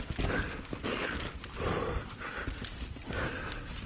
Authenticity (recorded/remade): recorded